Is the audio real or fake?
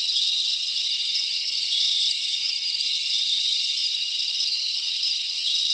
fake